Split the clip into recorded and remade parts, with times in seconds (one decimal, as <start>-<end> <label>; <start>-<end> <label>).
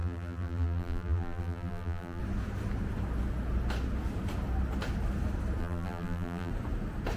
0.0-2.2 remade; 2.2-5.6 recorded; 5.6-6.5 remade; 6.5-7.2 recorded